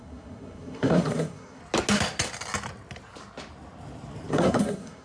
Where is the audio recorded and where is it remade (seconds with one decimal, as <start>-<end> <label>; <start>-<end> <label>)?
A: 0.0-1.6 remade; 1.6-4.3 recorded; 4.3-5.0 remade